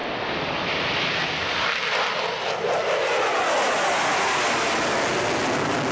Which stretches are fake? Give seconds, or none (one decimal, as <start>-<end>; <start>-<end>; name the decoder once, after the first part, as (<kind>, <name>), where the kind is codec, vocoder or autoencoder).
none